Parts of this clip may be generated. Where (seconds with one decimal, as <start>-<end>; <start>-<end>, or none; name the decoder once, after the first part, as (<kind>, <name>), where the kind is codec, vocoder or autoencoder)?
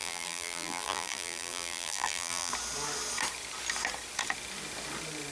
0.0-2.5 (vocoder, BigVGAN v2)